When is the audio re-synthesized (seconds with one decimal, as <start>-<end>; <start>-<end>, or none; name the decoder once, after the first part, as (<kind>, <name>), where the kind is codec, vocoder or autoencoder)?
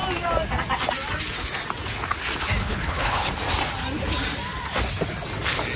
2.6-3.3 (codec, HILCodec)